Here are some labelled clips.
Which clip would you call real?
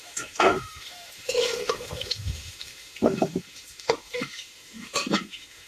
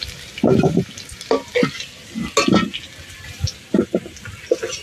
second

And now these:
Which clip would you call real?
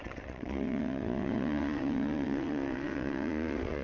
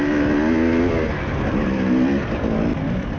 second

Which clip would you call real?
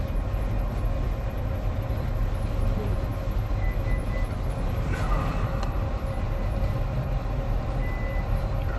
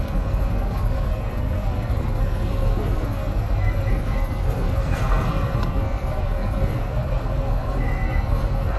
first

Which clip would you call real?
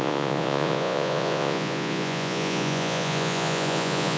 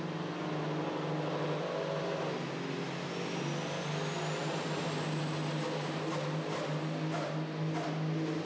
second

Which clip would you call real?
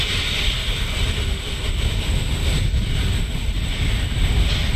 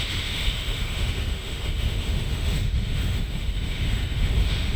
first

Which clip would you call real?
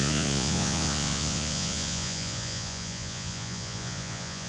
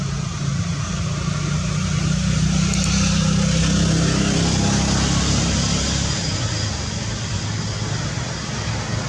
second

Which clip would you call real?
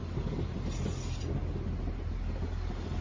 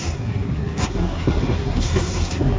first